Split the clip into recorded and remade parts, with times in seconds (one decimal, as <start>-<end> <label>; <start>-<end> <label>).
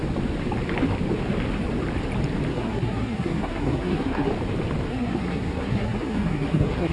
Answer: 0.0-2.5 recorded; 2.5-4.3 remade; 4.3-4.9 recorded; 4.9-6.9 remade